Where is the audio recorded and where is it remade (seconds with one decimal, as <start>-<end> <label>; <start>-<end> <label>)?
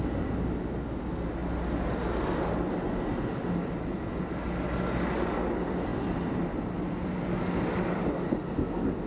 0.0-9.1 recorded